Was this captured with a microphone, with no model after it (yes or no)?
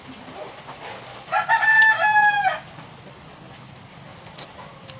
yes